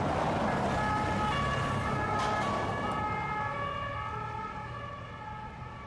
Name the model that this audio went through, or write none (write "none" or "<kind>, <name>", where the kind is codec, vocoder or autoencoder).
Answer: none